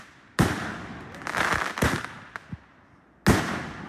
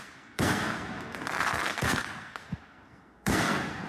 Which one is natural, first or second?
first